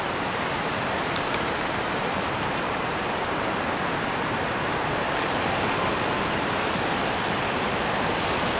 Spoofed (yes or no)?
yes